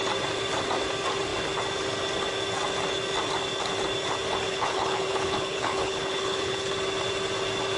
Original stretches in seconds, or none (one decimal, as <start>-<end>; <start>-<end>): 0.0-4.5; 6.7-7.8

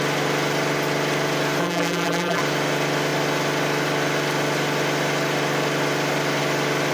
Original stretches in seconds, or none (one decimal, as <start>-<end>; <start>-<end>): 0.0-1.6; 2.4-6.9

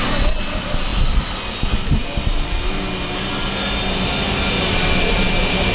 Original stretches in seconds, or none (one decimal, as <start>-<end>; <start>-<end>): 0.0-5.7

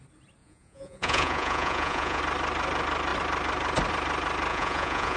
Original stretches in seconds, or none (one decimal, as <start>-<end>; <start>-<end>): 0.0-0.4; 2.2-4.5

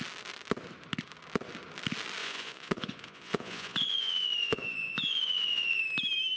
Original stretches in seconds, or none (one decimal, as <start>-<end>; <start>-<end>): 0.0-2.2; 5.8-6.4

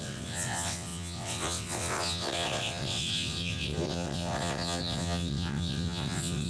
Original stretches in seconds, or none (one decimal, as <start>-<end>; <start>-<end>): none

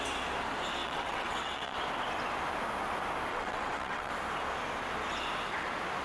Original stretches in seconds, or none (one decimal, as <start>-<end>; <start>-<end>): 0.0-0.8; 1.8-3.3; 4.1-6.0

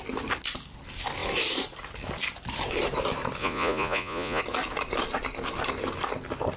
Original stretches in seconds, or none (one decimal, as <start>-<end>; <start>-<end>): 0.0-3.4; 4.4-6.6